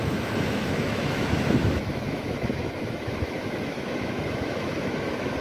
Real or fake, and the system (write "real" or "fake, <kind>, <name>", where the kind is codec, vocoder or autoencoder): fake, autoencoder, DAC-VAE